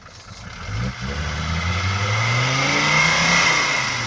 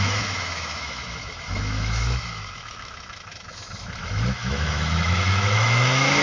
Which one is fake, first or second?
second